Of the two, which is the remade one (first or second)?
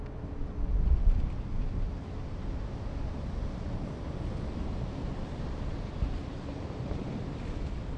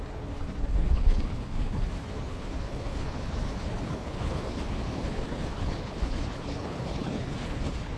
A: second